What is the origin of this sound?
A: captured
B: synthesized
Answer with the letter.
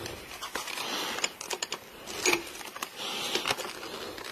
A